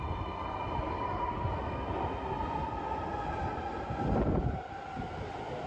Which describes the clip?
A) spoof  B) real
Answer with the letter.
B